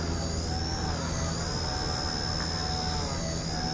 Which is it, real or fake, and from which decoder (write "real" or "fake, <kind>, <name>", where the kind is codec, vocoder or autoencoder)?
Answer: real